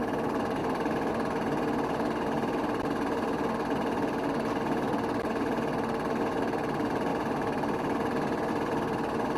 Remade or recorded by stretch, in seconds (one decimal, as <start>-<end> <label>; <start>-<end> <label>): 0.0-0.6 recorded; 0.6-1.1 remade; 1.1-7.1 recorded; 7.1-8.5 remade; 8.5-9.4 recorded